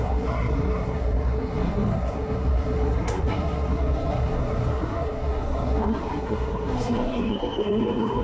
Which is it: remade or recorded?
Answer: remade